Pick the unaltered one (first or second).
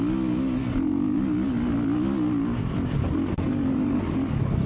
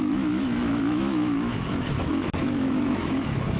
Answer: first